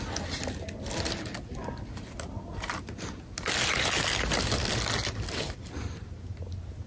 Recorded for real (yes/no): yes